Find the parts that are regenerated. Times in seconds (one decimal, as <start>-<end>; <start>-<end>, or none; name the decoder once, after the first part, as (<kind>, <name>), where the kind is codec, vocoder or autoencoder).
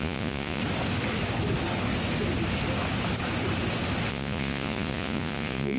0.0-0.6 (vocoder, Vocos); 4.1-5.8